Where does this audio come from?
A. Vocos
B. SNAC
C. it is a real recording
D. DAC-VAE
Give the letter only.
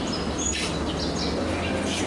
C